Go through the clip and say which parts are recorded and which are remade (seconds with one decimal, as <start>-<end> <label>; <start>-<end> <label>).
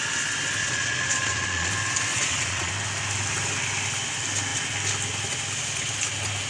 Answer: 0.0-0.6 recorded; 0.6-1.7 remade; 1.7-2.1 recorded; 2.1-2.7 remade; 2.7-6.5 recorded